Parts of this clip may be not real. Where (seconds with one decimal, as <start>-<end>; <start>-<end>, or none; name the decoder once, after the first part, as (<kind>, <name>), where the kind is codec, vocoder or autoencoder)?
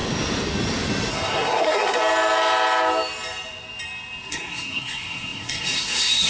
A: 1.1-2.0 (codec, SNAC); 4.3-6.3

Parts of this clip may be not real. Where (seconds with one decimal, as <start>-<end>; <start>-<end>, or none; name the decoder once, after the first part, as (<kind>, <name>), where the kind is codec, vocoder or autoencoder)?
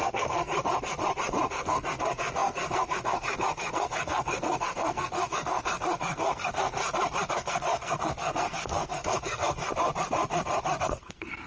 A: 0.0-0.5 (codec, SNAC); 1.5-6.8; 7.3-9.7; 10.8-11.5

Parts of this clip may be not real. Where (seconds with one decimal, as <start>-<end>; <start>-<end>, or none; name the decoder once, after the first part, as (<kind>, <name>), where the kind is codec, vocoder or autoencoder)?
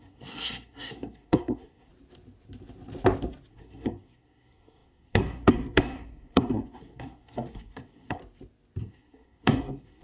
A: 0.0-1.9 (codec, SNAC); 3.5-8.2; 8.8-10.0